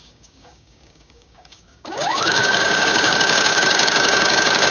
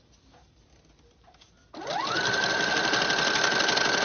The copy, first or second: first